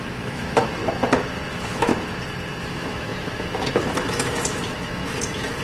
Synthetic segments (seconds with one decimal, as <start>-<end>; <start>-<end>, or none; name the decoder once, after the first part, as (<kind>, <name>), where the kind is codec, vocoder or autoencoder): 0.0-0.8 (autoencoder, DAC-VAE); 1.5-1.9; 2.6-5.6